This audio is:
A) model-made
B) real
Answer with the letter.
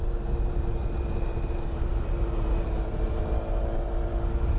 B